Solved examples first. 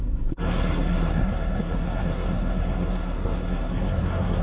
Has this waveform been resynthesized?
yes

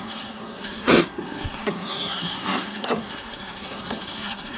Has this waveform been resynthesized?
yes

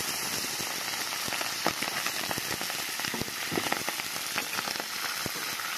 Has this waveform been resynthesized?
no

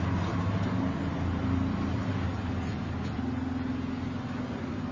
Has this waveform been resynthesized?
no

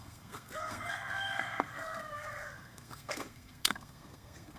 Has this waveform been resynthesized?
yes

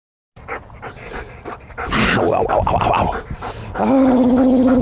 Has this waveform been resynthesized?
no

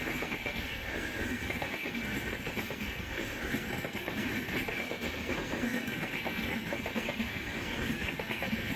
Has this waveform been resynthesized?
yes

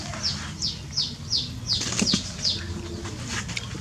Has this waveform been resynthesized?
no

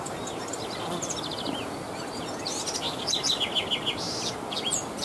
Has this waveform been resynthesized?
no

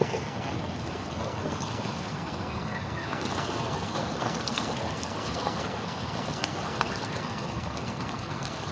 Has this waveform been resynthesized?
yes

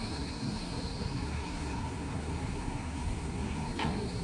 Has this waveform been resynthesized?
yes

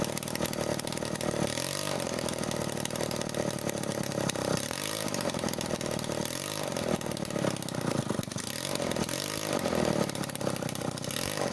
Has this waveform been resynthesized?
no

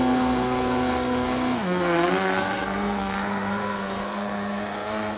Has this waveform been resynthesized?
yes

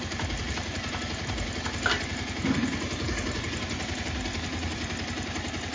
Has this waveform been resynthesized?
no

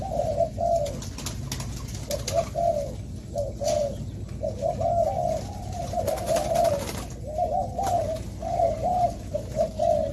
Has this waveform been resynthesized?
no